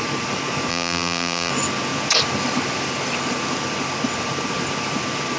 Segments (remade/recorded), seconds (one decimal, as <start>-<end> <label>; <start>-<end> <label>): 0.0-0.7 recorded; 0.7-1.5 remade; 1.5-5.4 recorded